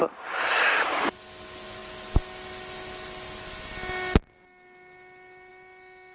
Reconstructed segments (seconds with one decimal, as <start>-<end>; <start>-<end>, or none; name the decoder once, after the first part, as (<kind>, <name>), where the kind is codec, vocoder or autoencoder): none